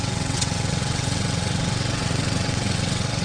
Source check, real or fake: fake